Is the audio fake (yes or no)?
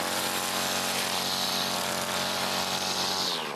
no